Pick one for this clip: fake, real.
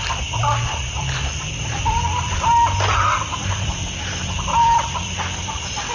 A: fake